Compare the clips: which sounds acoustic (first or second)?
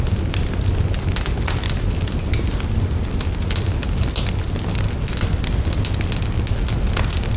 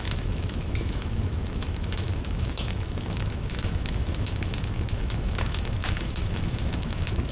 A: first